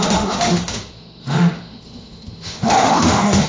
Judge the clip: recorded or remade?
remade